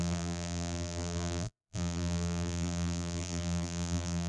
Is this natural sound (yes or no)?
no